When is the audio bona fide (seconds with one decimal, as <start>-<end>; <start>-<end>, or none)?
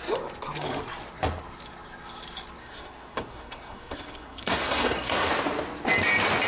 0.0-2.6; 5.3-6.5